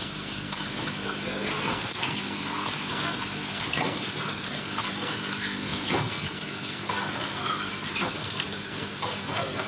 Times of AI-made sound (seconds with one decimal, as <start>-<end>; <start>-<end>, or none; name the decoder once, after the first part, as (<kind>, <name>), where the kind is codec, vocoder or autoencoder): 0.0-9.7 (codec, SNAC)